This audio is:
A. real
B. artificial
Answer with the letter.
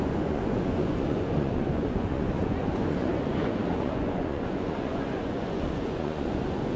B